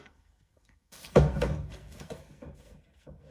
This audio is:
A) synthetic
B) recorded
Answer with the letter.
A